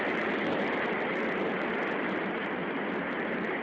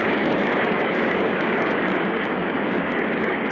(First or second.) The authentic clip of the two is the first